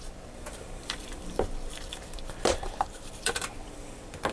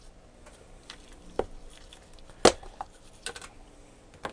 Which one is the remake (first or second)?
first